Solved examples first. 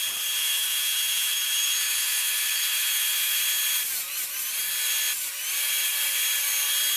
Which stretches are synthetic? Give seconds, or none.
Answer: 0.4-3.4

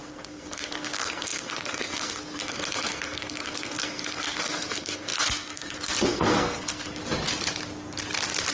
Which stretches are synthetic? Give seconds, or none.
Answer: 0.0-7.0

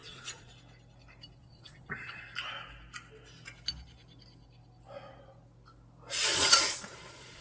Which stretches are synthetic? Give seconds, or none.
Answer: 0.0-0.5; 1.4-2.2; 6.3-7.4

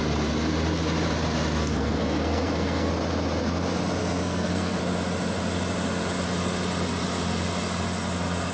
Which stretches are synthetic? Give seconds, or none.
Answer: 1.6-2.9; 4.0-4.8

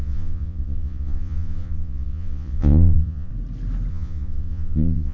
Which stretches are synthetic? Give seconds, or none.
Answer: 0.0-3.3; 3.9-5.1

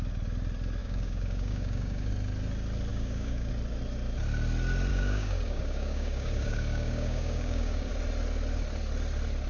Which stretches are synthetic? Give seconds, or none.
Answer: 0.8-2.1; 2.9-3.5; 4.9-7.9